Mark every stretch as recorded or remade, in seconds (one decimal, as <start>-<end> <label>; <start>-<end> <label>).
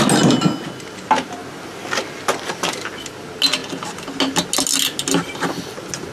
0.0-6.1 recorded